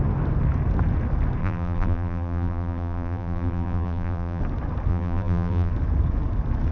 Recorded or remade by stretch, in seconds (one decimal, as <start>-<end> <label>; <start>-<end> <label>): 0.0-1.4 recorded; 1.4-4.4 remade; 4.4-4.9 recorded; 4.9-5.7 remade; 5.7-6.7 recorded